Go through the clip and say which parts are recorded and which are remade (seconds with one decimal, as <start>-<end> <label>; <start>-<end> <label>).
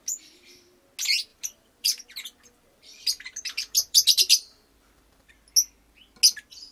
0.0-1.3 recorded; 1.3-5.3 remade; 5.3-6.7 recorded